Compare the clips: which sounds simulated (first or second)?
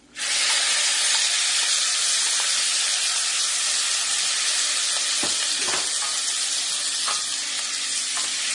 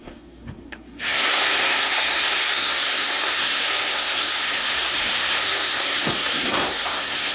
second